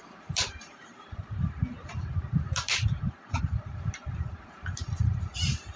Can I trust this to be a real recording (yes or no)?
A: no